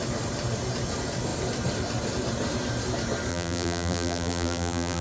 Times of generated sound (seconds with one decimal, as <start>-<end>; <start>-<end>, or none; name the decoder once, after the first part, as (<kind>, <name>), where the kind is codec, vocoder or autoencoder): 3.3-5.0 (vocoder, BigVGAN v2)